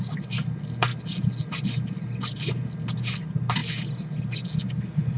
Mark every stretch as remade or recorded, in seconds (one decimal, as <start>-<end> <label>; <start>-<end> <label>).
0.0-5.2 recorded